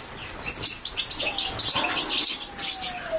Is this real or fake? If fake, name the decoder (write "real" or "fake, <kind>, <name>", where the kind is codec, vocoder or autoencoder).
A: real